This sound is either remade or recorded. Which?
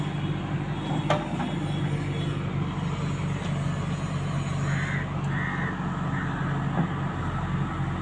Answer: recorded